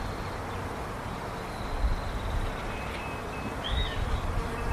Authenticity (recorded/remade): recorded